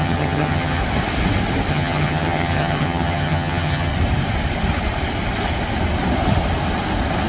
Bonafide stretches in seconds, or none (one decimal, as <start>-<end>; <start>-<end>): 0.8-1.7; 3.9-7.3